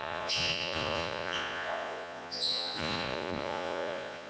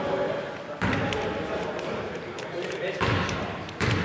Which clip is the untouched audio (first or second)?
second